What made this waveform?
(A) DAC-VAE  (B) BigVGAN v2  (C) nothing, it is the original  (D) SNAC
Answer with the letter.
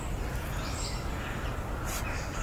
C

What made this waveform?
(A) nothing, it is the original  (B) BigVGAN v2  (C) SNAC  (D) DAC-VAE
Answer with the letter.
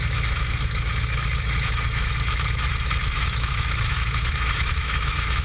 D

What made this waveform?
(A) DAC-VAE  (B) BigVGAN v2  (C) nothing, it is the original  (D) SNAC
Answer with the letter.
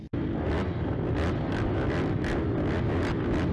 C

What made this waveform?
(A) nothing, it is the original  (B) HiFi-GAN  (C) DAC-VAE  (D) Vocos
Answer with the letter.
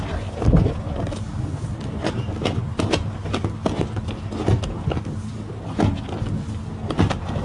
A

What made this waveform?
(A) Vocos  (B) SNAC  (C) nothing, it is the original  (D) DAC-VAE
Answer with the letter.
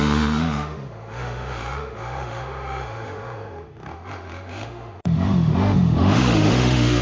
D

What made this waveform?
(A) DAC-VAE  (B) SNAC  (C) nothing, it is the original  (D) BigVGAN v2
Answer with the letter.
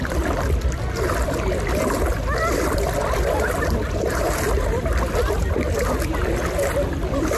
C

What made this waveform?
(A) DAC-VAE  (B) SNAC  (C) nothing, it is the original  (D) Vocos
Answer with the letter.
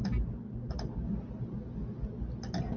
C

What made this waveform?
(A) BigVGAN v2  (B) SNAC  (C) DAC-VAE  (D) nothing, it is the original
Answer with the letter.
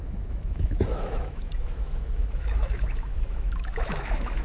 C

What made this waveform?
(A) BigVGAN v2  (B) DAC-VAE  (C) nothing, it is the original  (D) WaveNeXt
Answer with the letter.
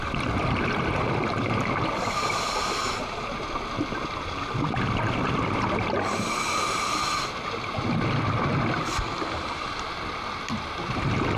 C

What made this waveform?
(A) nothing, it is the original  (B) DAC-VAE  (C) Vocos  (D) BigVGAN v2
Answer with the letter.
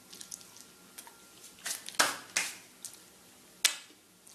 A